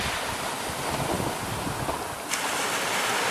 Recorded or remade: recorded